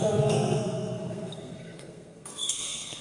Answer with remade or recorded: remade